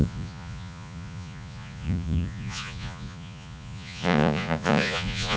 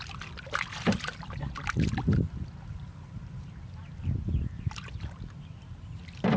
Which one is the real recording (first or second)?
second